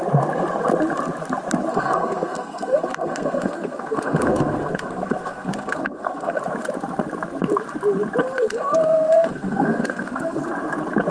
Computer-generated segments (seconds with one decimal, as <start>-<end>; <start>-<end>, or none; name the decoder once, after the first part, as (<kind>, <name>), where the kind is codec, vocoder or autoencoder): 1.7-6.4 (codec, SNAC); 8.2-10.5